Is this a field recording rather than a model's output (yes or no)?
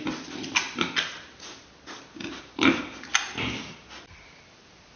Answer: yes